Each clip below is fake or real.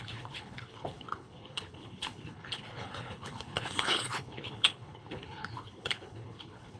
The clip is fake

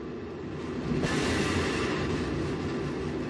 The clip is real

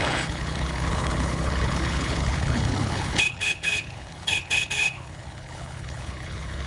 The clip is fake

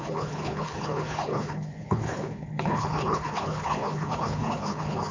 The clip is fake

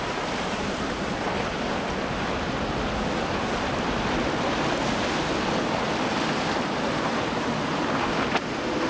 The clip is real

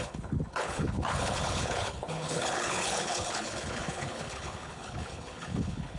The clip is fake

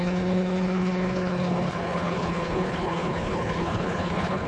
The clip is fake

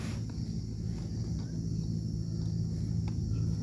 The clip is real